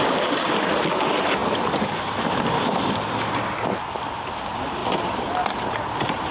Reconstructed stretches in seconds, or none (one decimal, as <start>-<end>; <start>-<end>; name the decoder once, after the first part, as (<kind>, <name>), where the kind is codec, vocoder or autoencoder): none